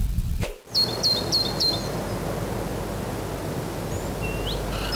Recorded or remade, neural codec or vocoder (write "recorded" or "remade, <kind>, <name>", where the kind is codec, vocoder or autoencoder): recorded